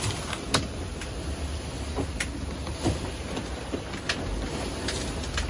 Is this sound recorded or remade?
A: recorded